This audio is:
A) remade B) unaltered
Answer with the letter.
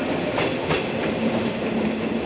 B